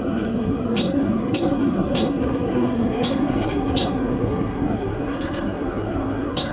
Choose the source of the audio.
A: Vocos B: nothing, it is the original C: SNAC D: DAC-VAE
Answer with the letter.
C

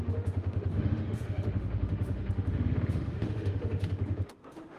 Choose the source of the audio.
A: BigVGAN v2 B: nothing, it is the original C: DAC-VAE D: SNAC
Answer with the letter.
C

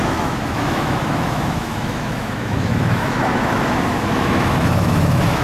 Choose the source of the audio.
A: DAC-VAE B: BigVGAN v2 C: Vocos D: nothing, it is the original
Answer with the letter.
A